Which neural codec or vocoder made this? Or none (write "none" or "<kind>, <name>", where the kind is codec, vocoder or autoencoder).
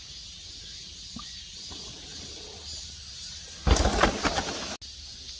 none